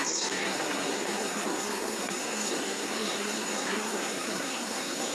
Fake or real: fake